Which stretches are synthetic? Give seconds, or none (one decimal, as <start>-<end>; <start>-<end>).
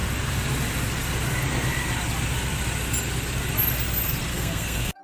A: 4.3-5.0